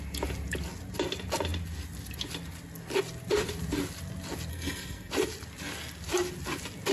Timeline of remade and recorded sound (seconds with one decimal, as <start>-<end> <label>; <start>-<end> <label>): 0.0-4.5 recorded; 4.5-5.1 remade; 5.1-6.9 recorded